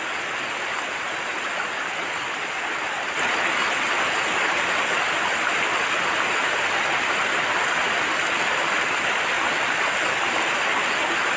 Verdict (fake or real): real